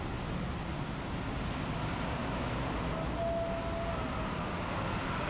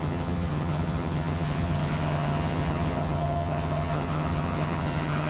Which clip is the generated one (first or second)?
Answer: second